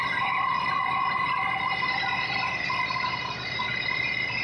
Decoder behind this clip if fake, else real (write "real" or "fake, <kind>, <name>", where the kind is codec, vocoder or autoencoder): real